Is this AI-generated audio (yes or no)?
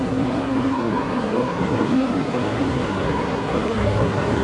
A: yes